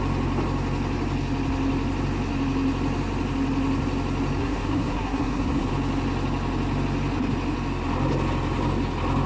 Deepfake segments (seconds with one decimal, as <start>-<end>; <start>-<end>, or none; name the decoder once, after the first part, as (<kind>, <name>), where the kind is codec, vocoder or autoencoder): 4.4-5.7 (codec, SNAC)